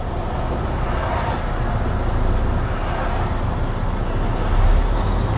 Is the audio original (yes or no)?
yes